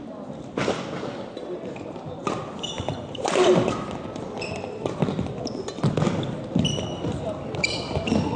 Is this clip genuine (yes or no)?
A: yes